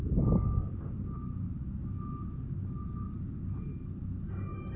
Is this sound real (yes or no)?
yes